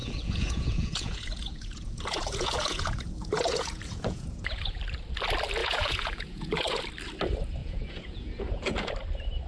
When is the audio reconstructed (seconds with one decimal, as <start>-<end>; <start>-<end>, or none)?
0.0-4.8; 5.6-6.8; 7.6-8.9